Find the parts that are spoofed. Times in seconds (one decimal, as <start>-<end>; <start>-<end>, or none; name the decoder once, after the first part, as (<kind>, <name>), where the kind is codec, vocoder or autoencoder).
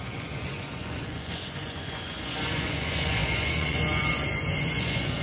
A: 0.0-5.2 (vocoder, Vocos)